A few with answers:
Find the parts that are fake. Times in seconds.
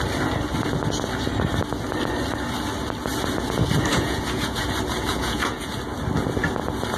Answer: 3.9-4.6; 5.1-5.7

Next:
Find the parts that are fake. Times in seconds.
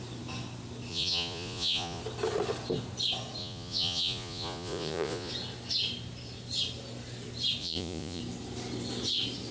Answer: 0.9-2.0; 3.4-5.3; 7.6-8.2